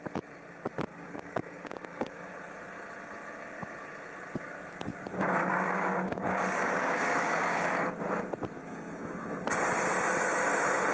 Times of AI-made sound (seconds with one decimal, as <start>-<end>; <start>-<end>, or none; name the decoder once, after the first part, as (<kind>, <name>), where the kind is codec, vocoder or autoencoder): 0.9-2.3 (codec, DAC); 4.9-8.0; 8.6-9.2

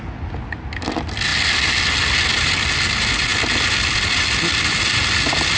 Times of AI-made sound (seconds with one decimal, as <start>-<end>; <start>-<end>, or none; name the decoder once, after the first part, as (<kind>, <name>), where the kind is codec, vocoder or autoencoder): none

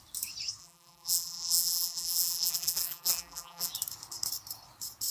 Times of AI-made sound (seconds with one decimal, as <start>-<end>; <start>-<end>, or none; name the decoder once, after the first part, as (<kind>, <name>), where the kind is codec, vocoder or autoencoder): 0.6-3.7 (vocoder, BigVGAN v2)

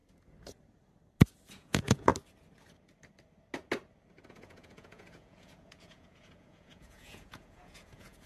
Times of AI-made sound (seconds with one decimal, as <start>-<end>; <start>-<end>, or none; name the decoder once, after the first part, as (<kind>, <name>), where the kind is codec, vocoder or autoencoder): 1.5-2.1 (vocoder, Vocos); 4.3-8.3

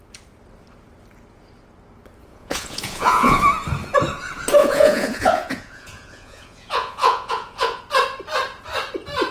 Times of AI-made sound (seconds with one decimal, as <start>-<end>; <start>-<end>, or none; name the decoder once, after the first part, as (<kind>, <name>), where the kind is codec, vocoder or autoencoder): 2.3-3.4 (vocoder, Vocos); 4.6-7.8

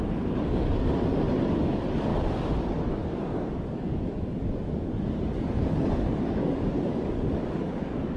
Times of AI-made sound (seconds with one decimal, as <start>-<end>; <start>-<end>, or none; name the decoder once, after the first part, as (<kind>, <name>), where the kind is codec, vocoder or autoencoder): 0.0-2.1 (codec, DAC); 2.9-8.2

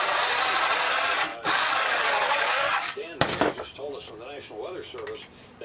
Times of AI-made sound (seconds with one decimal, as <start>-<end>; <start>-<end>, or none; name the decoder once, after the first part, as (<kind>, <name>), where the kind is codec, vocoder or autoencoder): 1.3-4.1 (codec, DAC)